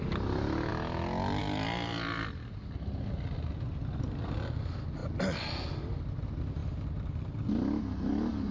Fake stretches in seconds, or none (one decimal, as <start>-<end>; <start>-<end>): none